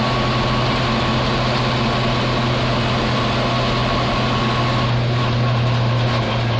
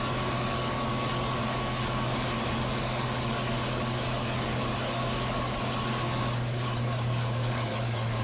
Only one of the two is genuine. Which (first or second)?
first